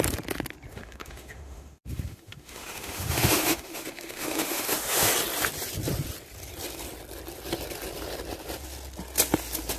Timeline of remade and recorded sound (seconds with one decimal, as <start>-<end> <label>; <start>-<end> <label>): 0.0-0.7 recorded; 0.7-5.1 remade; 5.1-9.8 recorded